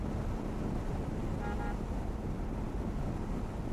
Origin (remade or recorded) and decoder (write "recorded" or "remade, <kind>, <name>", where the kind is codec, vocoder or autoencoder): recorded